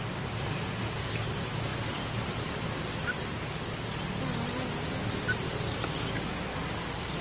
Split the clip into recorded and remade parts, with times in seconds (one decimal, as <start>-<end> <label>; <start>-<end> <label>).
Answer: 0.0-7.2 recorded